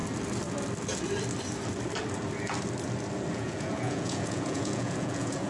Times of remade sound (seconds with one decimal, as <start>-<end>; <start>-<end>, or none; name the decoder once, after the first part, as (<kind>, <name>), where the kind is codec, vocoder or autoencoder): 3.3-5.5 (vocoder, Vocos)